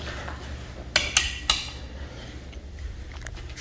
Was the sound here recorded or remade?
recorded